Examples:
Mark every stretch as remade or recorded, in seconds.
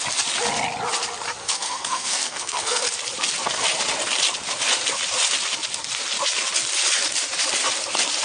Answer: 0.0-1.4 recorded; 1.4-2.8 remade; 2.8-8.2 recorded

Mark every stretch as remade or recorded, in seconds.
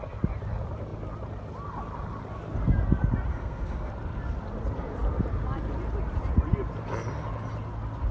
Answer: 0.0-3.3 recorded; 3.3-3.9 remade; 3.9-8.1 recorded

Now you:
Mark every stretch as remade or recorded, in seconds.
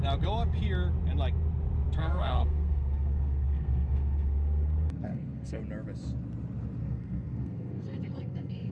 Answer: 0.0-2.0 recorded; 2.0-5.6 remade; 5.6-6.8 recorded; 6.8-8.7 remade